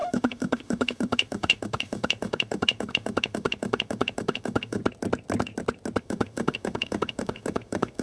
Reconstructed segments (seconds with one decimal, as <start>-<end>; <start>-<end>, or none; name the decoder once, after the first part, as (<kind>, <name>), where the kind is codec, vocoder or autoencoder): 0.0-4.8 (autoencoder, DAC-VAE); 6.0-8.0